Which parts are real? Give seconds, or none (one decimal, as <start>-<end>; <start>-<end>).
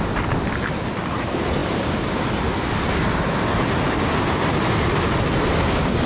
0.0-6.1